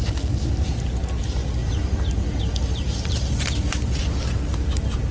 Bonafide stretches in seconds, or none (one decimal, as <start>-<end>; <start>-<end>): 0.0-1.6; 4.0-5.1